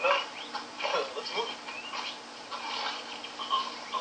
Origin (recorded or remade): remade